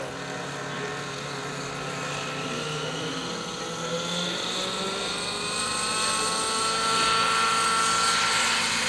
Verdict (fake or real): real